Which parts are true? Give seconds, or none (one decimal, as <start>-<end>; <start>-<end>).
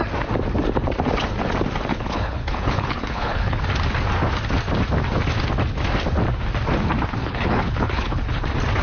0.0-1.9; 3.6-7.2; 8.4-8.8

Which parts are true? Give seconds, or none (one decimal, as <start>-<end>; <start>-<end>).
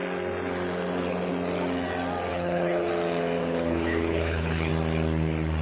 0.0-2.3; 2.9-3.4; 4.7-5.6